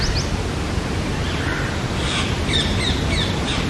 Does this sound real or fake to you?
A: real